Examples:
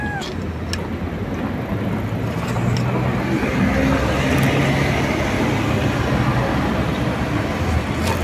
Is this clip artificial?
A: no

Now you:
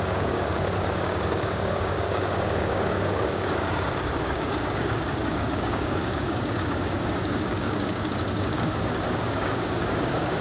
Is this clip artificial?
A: yes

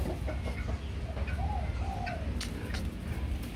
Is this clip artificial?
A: no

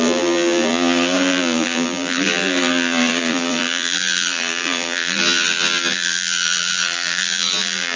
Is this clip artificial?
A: yes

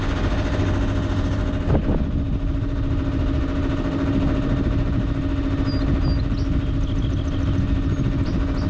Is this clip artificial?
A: no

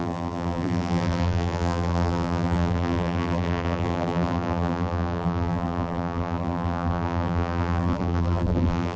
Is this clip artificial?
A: yes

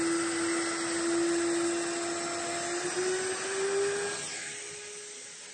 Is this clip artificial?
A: no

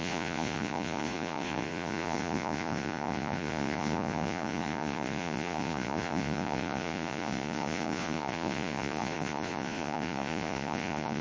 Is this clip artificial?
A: yes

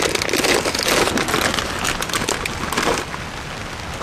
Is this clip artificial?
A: no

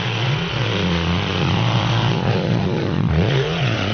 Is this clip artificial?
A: yes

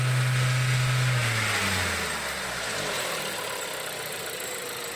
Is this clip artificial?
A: no